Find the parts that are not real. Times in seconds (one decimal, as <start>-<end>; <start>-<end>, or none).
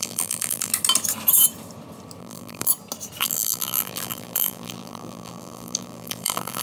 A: 0.0-0.7; 2.2-2.7; 3.2-6.6